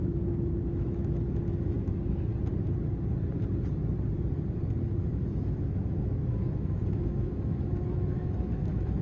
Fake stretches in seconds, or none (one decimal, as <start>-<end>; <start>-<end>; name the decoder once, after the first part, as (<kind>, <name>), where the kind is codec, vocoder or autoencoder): 0.0-2.3 (autoencoder, DAC-VAE); 5.0-9.0